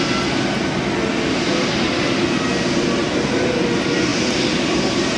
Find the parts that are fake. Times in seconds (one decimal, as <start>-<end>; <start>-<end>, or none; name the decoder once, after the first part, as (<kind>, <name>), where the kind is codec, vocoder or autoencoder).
none